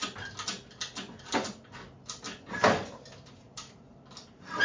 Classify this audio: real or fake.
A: real